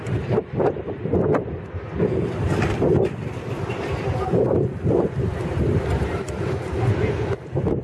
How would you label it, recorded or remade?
remade